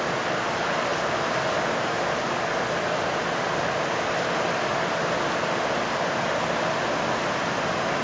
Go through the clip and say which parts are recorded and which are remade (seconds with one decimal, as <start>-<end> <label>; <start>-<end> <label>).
0.0-8.0 recorded